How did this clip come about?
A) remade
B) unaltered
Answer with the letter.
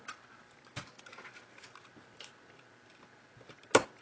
B